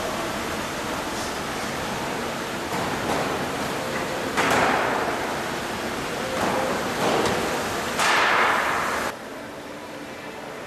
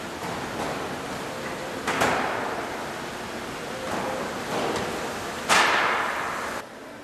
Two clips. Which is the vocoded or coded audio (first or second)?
first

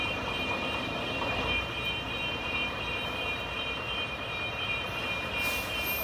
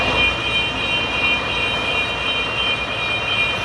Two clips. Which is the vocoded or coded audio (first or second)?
first